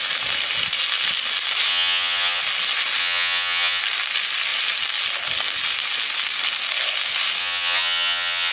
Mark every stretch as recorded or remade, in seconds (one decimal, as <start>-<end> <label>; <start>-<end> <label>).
0.0-1.7 recorded; 1.7-2.4 remade; 2.4-3.0 recorded; 3.0-3.8 remade; 3.8-7.4 recorded; 7.4-8.5 remade